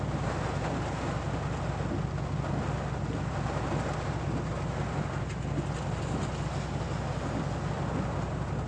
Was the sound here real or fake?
real